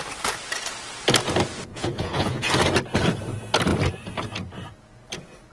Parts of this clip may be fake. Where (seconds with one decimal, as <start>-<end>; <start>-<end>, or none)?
1.7-2.5

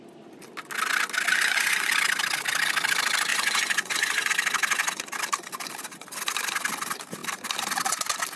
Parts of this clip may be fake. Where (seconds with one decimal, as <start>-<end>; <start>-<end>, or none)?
1.3-1.9; 3.3-4.3

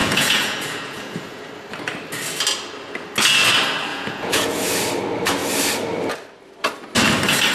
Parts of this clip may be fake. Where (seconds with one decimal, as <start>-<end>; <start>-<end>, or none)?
0.0-1.5; 3.9-4.7

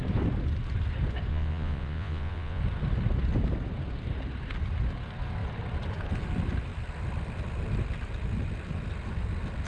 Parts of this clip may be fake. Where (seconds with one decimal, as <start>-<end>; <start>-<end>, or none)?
1.3-2.6

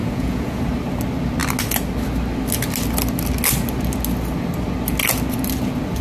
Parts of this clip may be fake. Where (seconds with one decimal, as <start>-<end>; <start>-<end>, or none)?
0.0-0.6

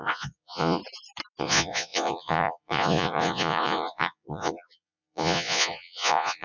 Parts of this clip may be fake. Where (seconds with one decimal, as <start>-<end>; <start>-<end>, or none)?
0.0-0.8; 1.4-6.4

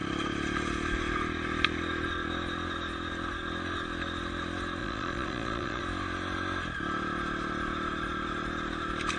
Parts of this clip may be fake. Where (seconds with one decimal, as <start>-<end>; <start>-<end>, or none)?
4.8-5.8

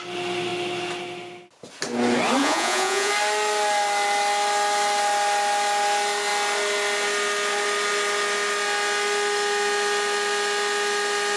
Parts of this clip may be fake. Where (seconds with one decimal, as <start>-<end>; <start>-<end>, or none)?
2.4-3.1